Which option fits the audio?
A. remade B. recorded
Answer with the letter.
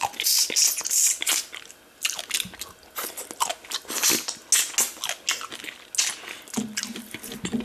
B